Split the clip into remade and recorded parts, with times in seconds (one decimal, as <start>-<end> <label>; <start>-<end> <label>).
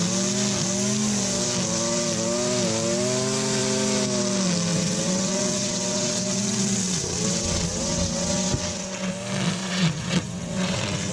0.0-4.7 recorded; 4.7-9.1 remade; 9.1-9.6 recorded; 9.6-11.1 remade